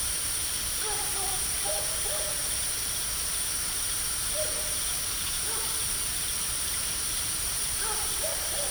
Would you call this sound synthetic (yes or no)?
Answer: yes